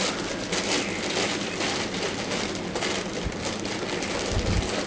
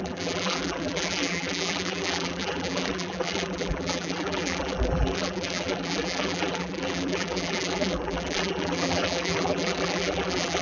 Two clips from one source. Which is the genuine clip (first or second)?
first